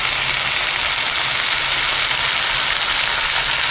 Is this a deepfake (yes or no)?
no